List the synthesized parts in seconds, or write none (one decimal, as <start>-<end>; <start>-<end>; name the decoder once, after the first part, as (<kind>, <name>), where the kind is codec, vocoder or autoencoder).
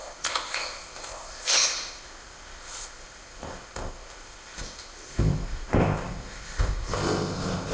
0.0-7.7 (codec, ZipCodec)